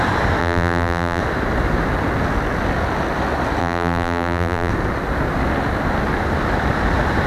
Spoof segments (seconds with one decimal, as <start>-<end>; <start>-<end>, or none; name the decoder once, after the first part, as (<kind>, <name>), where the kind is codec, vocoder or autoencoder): 0.4-1.2 (vocoder, BigVGAN v2); 3.6-4.7

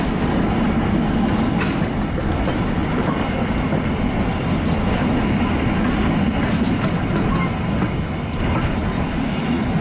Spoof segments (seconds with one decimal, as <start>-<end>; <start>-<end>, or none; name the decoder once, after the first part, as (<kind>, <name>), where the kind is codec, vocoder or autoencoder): none